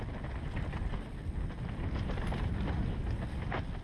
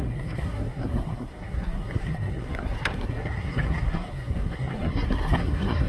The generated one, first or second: second